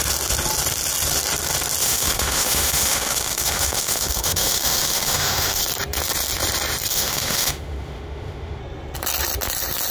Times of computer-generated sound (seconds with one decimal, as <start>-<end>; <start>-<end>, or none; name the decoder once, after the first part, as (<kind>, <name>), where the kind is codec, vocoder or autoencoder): 1.8-5.6 (autoencoder, DAC-VAE); 6.9-8.6